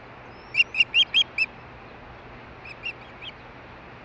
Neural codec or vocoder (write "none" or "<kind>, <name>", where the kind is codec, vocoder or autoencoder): none